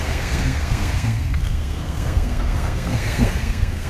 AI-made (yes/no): yes